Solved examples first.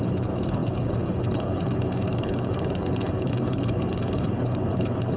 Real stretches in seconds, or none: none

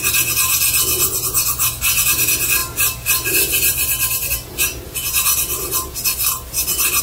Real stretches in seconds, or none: 0.0-2.6

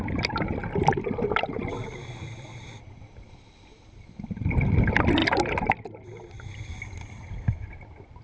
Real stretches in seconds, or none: 0.0-0.6; 4.3-8.2

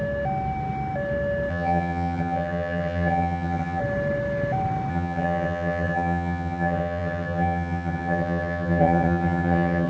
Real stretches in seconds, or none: 0.0-1.5; 3.8-4.9

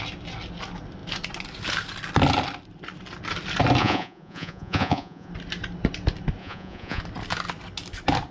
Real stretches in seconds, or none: 0.0-3.8; 5.3-6.4; 7.0-8.3

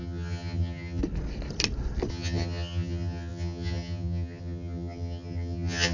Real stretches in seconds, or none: 1.0-2.1